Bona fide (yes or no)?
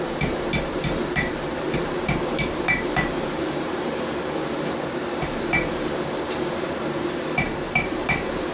no